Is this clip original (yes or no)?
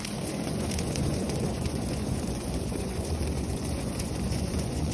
no